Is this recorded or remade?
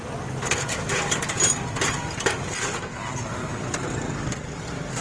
recorded